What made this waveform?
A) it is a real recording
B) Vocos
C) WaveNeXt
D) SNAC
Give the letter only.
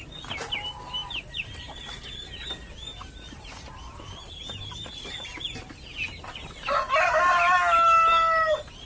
A